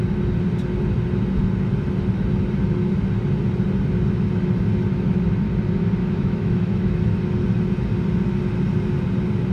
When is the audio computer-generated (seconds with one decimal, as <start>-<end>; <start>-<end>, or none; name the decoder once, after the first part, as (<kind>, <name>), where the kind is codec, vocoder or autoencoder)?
6.0-7.0 (autoencoder, DAC-VAE)